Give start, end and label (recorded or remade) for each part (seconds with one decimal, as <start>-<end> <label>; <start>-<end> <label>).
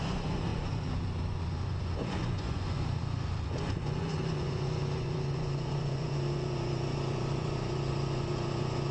0.0-8.9 remade